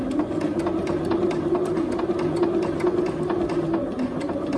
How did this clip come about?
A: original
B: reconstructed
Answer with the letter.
A